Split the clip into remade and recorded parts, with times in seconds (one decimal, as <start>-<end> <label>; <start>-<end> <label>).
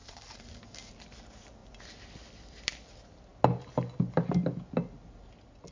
0.0-5.7 recorded